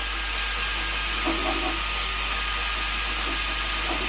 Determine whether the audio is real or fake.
real